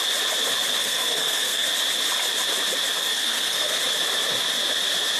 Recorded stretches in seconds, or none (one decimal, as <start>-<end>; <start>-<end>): 0.0-0.8; 1.7-3.0; 3.8-5.2